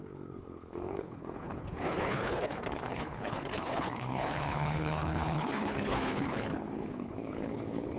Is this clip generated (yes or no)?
yes